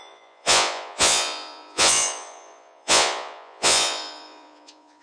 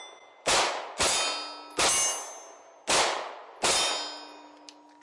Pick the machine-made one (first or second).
first